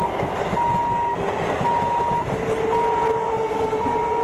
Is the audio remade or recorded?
recorded